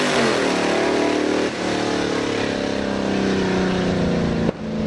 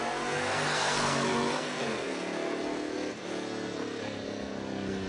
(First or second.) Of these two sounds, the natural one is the first